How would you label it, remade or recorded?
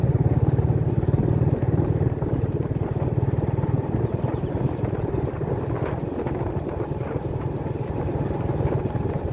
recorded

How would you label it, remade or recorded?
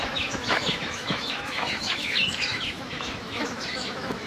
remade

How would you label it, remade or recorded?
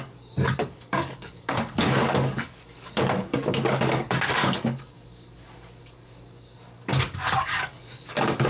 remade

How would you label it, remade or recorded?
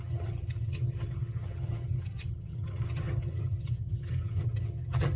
remade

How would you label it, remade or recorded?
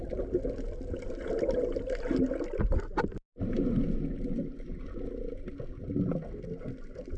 recorded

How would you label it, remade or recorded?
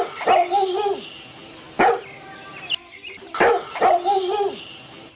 recorded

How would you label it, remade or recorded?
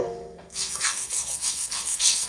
remade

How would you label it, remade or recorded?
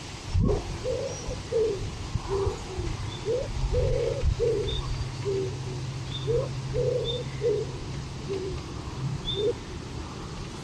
recorded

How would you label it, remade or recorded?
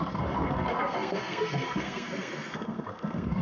remade